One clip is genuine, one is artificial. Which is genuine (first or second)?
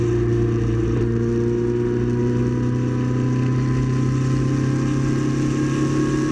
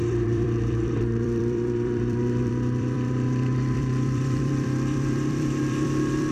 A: first